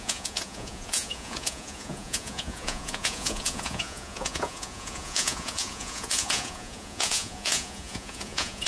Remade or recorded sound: remade